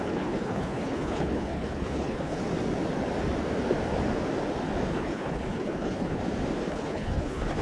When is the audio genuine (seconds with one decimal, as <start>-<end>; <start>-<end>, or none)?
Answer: 2.4-4.9; 6.2-6.7